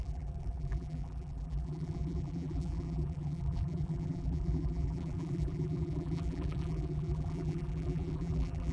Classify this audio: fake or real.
fake